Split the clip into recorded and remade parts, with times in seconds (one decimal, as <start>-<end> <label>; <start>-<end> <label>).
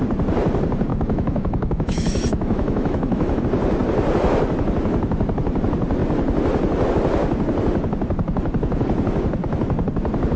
0.0-0.9 recorded; 0.9-3.4 remade; 3.4-10.4 recorded